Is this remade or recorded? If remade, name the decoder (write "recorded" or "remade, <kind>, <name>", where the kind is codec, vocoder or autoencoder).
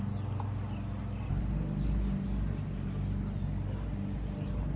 recorded